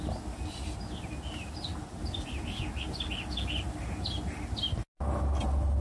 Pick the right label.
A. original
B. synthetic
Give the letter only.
A